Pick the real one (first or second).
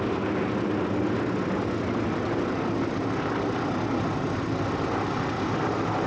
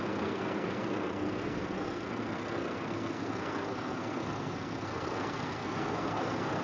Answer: first